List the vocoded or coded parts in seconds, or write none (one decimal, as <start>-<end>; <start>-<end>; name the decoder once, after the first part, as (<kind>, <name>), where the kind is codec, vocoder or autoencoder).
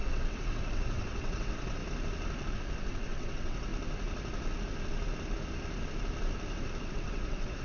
0.0-1.8 (vocoder, WaveNeXt); 2.5-3.7; 6.8-7.6